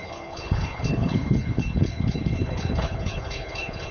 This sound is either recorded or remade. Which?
remade